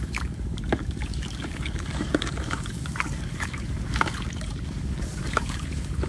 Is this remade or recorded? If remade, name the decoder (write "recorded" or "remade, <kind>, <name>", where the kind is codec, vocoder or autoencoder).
remade, codec, DAC